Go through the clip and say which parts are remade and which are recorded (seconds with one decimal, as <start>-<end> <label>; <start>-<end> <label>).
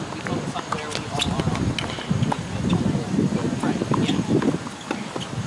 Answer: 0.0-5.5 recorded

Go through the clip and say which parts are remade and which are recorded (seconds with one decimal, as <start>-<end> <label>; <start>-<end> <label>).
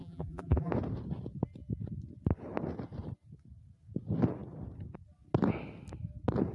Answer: 0.0-0.7 remade; 0.7-6.5 recorded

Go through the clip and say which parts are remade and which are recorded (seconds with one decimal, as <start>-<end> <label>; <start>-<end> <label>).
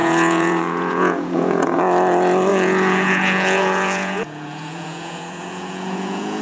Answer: 0.0-1.8 remade; 1.8-2.5 recorded; 2.5-6.4 remade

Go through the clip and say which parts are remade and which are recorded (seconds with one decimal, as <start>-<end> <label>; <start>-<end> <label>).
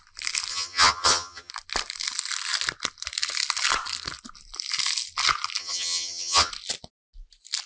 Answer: 0.0-0.5 recorded; 0.5-1.5 remade; 1.5-5.6 recorded; 5.6-6.5 remade; 6.5-7.7 recorded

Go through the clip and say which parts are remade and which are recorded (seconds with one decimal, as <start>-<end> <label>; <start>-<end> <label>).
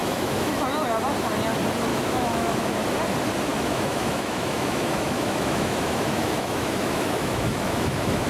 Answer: 0.0-0.5 remade; 0.5-1.9 recorded; 1.9-2.7 remade; 2.7-3.5 recorded; 3.5-8.3 remade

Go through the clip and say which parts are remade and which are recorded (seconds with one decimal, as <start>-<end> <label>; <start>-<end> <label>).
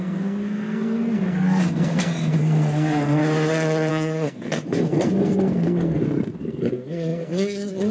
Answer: 0.0-3.2 remade; 3.2-3.9 recorded; 3.9-7.9 remade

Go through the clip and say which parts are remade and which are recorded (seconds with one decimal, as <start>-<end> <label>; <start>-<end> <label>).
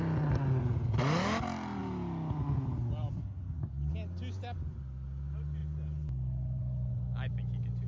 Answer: 0.0-7.9 recorded